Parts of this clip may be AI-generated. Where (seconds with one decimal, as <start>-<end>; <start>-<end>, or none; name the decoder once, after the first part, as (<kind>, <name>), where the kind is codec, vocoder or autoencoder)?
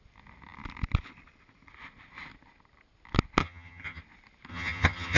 3.4-4.0 (vocoder, HiFi-GAN); 4.5-5.2